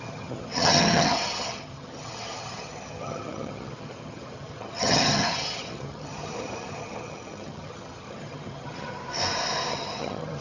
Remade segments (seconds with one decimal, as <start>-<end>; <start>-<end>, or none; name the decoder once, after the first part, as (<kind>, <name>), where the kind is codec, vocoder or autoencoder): 0.0-9.0 (vocoder, HiFi-GAN); 9.7-10.4